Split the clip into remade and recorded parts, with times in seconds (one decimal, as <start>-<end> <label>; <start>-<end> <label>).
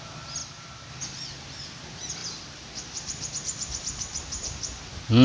0.0-0.4 recorded; 0.4-0.9 remade; 0.9-2.2 recorded; 2.2-4.6 remade; 4.6-5.2 recorded